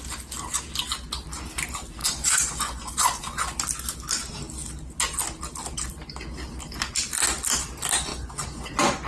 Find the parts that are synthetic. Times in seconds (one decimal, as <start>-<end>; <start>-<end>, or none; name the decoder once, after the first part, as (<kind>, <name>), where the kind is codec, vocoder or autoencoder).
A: 2.0-3.6 (vocoder, Vocos); 8.1-9.1